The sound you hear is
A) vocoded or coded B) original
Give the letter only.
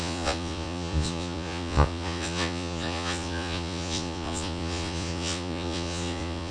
A